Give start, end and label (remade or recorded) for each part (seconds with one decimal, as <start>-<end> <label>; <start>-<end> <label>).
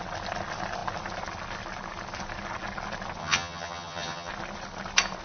0.0-3.2 recorded; 3.2-4.3 remade; 4.3-5.2 recorded